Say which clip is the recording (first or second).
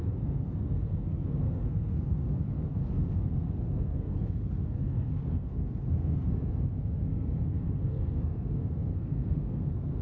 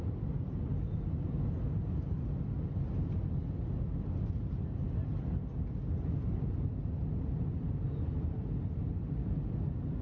second